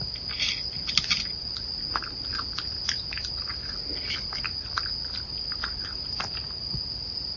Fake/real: real